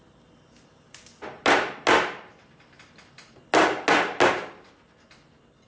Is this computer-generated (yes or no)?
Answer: no